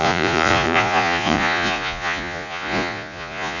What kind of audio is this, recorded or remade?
remade